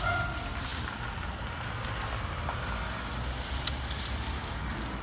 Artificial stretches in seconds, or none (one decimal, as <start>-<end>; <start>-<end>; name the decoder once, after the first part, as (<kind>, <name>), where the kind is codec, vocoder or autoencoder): none

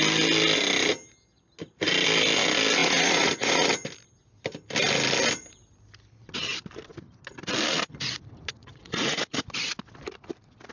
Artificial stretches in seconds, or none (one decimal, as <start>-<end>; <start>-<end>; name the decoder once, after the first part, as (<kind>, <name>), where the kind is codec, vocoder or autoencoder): 2.8-3.7 (vocoder, Vocos); 8.6-9.5

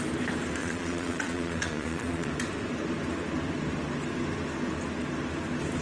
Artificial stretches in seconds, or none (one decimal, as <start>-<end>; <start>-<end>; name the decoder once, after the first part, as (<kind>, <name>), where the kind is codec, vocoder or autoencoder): 0.6-2.3 (vocoder, Vocos)

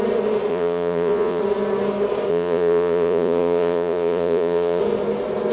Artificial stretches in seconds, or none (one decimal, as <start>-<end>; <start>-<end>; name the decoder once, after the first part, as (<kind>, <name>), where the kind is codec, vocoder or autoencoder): 0.5-1.4 (vocoder, Vocos); 2.3-4.8

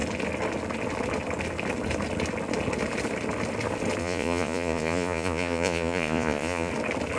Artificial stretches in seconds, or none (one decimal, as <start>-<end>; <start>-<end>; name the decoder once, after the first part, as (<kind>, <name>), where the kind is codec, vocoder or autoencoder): 4.0-6.7 (vocoder, Vocos)